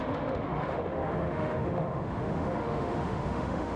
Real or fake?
fake